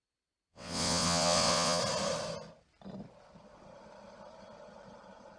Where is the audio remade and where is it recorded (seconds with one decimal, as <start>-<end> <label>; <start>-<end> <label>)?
0.0-0.5 recorded; 0.5-1.8 remade; 1.8-5.4 recorded